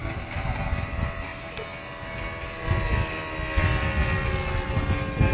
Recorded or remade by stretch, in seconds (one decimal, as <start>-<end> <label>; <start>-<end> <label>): 0.0-0.6 remade; 0.6-5.3 recorded